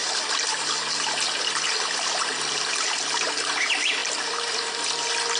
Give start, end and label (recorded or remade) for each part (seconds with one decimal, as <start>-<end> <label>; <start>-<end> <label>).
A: 0.0-5.4 recorded